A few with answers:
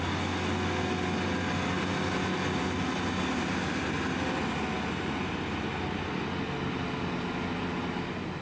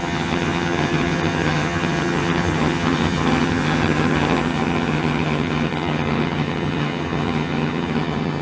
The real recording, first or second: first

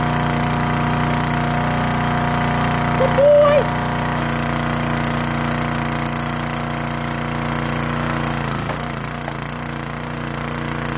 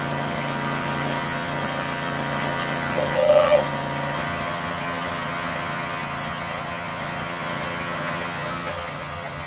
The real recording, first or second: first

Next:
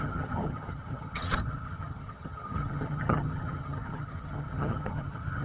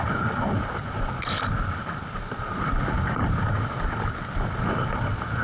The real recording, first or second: second